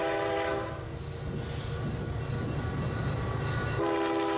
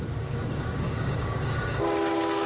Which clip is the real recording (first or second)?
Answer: first